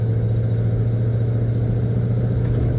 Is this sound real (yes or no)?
yes